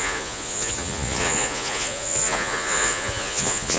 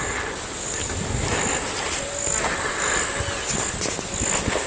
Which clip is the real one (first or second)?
second